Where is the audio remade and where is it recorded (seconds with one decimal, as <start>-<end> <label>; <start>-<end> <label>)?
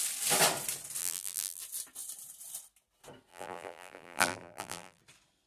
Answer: 0.0-1.0 recorded; 1.0-1.6 remade; 1.6-3.3 recorded; 3.3-5.0 remade; 5.0-5.5 recorded